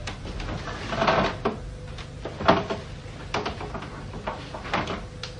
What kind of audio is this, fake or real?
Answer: real